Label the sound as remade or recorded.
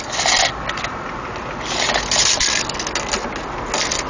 recorded